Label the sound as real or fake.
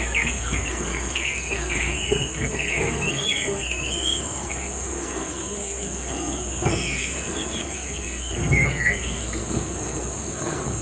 fake